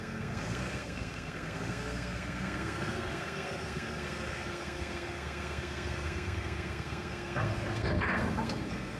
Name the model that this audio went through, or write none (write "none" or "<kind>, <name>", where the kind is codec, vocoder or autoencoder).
codec, SNAC